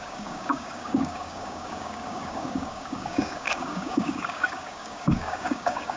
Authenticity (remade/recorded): remade